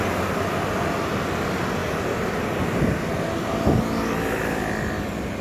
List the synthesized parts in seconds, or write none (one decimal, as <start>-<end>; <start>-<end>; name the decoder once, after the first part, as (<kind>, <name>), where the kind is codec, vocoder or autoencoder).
none